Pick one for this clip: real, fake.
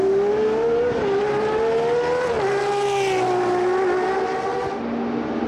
real